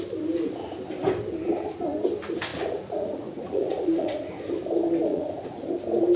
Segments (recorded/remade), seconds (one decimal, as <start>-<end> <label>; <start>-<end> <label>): 0.0-2.5 recorded; 2.5-4.4 remade; 4.4-5.1 recorded; 5.1-5.7 remade; 5.7-6.2 recorded